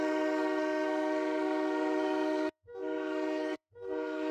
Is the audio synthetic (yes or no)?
yes